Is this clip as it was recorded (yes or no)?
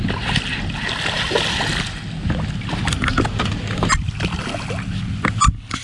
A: yes